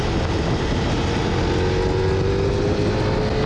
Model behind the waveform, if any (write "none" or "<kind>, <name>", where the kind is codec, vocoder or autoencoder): none